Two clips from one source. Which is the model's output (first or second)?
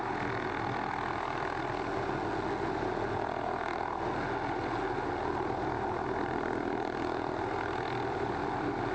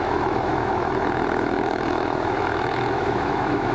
second